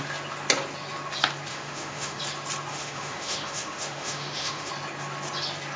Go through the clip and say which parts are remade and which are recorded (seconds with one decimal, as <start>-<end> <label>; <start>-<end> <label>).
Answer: 0.0-1.5 recorded; 1.5-2.2 remade; 2.2-2.7 recorded; 2.7-4.7 remade; 4.7-5.8 recorded